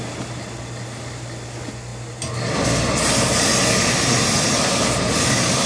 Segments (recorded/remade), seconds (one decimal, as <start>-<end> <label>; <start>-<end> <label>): 0.0-5.7 recorded